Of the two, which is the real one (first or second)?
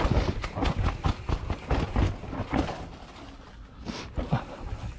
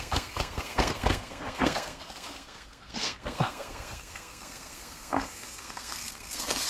first